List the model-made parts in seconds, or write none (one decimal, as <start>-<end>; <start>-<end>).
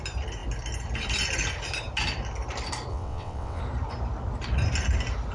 2.9-3.6